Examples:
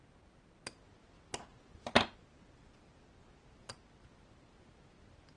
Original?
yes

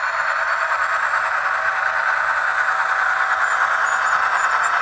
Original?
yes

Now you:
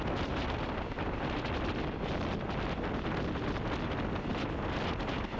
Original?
yes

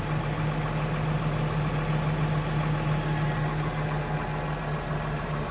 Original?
yes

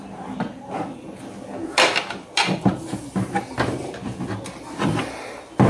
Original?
yes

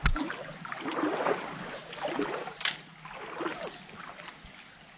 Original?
yes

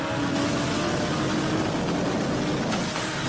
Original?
yes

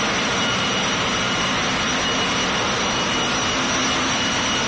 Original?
yes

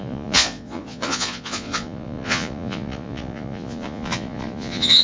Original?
no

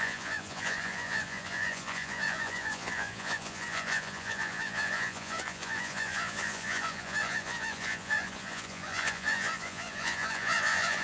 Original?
no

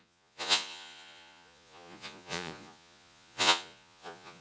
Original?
no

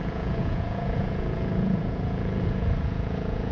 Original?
no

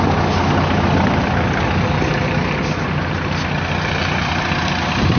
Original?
yes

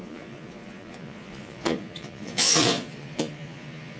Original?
no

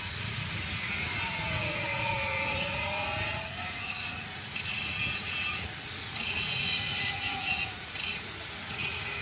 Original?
no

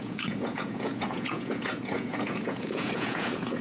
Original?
no